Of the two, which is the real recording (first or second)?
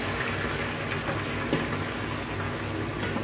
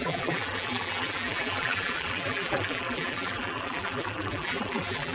first